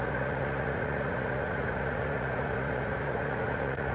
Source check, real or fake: fake